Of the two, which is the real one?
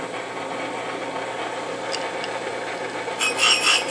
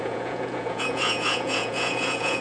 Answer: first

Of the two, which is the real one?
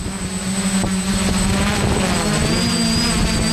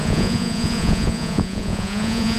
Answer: first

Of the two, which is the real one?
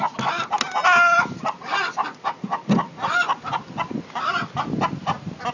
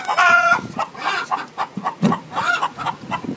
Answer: first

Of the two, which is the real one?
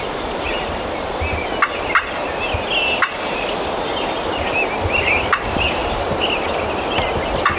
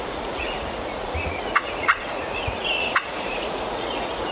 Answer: first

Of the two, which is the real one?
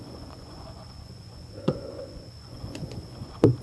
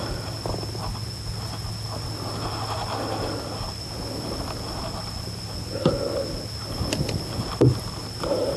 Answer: second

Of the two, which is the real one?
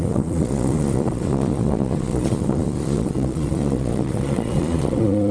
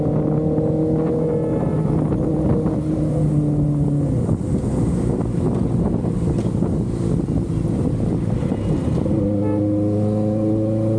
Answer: second